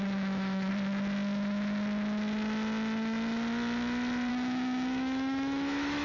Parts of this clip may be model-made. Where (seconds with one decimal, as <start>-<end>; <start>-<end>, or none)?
0.0-0.7; 4.3-6.0

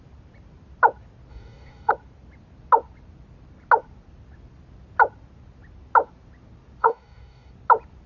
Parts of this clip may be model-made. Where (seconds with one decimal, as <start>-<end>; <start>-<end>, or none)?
1.3-1.9; 6.8-7.5

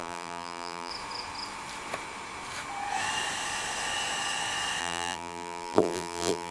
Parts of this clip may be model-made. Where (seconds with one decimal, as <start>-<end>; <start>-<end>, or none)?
0.0-0.9; 4.8-6.5

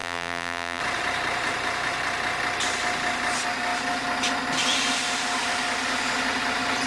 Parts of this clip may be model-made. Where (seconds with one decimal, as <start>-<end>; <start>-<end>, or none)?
0.0-0.8

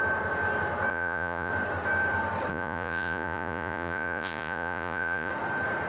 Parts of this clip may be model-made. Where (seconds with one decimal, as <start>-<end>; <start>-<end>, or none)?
0.9-1.5; 2.5-5.3

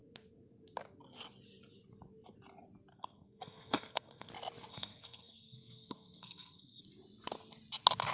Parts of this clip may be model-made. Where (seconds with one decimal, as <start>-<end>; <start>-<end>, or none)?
2.9-4.3; 4.7-6.8

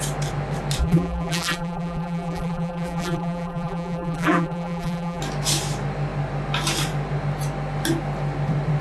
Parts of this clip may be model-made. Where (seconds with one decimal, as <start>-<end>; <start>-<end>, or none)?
0.8-5.2